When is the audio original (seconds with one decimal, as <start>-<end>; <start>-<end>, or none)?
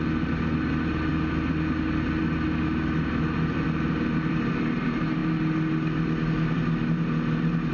0.0-7.7